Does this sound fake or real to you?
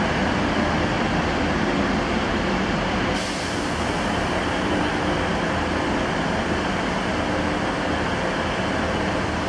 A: real